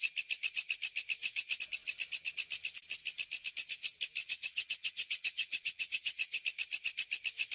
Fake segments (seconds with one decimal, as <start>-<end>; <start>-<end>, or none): 4.2-6.4